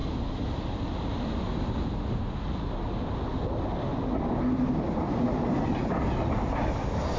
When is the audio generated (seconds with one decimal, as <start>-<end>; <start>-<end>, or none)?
none